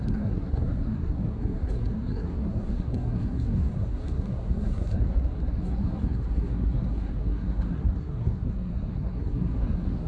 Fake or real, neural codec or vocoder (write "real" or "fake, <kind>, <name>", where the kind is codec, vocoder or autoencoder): fake, codec, SNAC